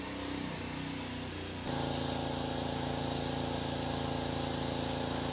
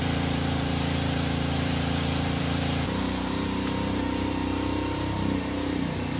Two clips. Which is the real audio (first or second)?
first